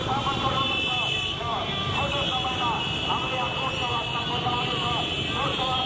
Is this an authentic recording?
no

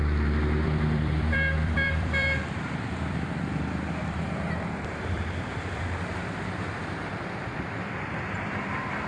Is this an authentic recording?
no